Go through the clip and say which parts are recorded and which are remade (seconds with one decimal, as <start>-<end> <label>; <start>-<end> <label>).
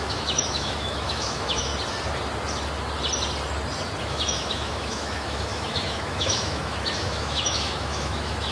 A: 0.0-1.7 remade; 1.7-4.0 recorded; 4.0-8.5 remade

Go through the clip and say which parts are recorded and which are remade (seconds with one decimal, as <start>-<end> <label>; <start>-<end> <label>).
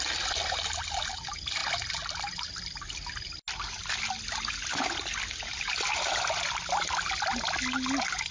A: 0.0-8.3 recorded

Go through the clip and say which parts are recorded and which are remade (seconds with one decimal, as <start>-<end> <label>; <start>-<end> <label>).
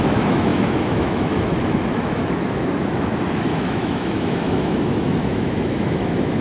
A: 0.0-6.4 remade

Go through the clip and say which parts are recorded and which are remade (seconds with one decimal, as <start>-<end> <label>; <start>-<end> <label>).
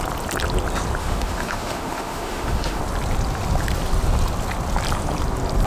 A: 0.0-1.0 recorded; 1.0-2.8 remade; 2.8-5.7 recorded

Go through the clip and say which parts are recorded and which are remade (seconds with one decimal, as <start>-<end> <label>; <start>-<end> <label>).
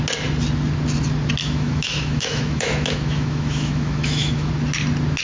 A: 0.0-1.4 recorded; 1.4-4.5 remade; 4.5-5.2 recorded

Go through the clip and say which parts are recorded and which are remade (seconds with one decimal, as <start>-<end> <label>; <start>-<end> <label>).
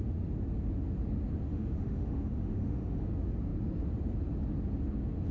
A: 0.0-1.5 recorded; 1.5-3.1 remade; 3.1-5.3 recorded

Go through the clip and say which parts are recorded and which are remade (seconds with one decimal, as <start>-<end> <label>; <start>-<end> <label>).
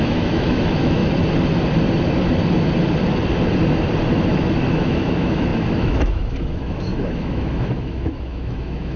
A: 0.0-1.0 remade; 1.0-4.7 recorded; 4.7-9.0 remade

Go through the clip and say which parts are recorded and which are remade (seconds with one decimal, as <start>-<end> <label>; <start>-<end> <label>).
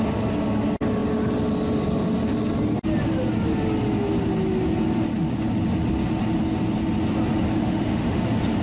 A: 0.0-7.6 recorded; 7.6-8.2 remade; 8.2-8.6 recorded